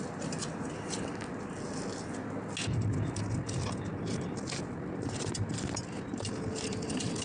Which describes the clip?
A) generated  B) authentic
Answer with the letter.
B